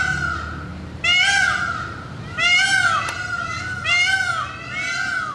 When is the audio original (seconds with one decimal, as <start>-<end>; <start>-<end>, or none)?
0.0-5.3